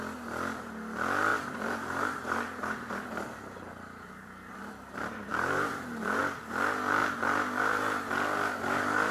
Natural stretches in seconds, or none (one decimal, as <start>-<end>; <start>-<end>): 0.0-1.3; 3.1-4.6; 6.2-7.0; 7.8-9.1